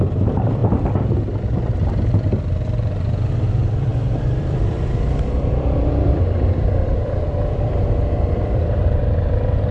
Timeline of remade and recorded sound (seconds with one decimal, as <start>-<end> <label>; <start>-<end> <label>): 0.0-0.6 remade; 0.6-3.3 recorded; 3.3-9.7 remade

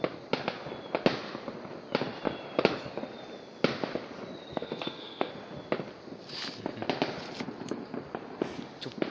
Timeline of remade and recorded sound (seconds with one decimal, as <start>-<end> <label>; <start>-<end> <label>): 0.0-4.5 recorded; 4.5-5.3 remade; 5.3-9.1 recorded

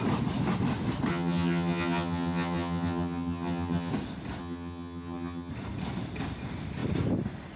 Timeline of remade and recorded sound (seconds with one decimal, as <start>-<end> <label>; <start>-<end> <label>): 0.0-1.1 recorded; 1.1-3.9 remade; 3.9-4.4 recorded; 4.4-5.5 remade; 5.5-7.6 recorded

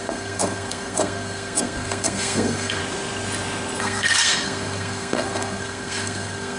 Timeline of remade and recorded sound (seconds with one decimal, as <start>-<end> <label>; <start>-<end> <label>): 0.0-2.8 remade; 2.8-3.8 recorded; 3.8-6.6 remade

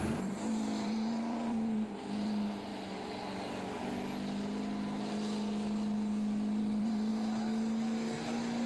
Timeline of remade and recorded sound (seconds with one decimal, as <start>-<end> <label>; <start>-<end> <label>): 0.0-2.7 remade; 2.7-6.6 recorded; 6.6-7.1 remade; 7.1-8.7 recorded